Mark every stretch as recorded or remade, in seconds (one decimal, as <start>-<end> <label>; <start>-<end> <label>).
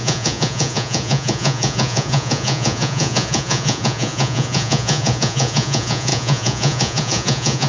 0.0-7.7 remade